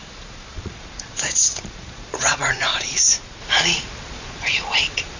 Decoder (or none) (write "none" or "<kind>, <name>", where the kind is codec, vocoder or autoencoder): vocoder, Vocos